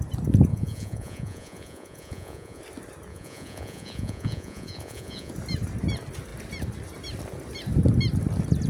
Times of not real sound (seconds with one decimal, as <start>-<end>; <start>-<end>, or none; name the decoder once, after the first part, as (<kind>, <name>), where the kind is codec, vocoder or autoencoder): 0.5-2.6 (vocoder, Vocos); 3.1-5.3